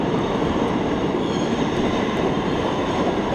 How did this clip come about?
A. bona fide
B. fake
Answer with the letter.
B